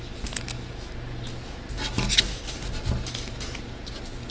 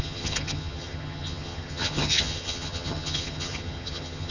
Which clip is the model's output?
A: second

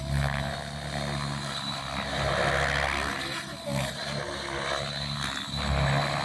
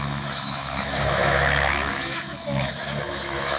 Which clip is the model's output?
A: second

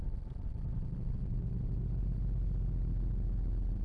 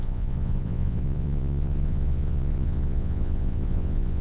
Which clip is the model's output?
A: second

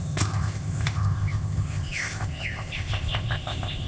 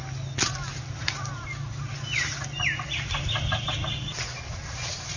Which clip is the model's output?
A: first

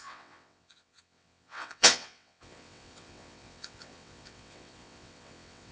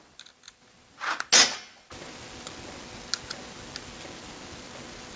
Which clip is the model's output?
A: first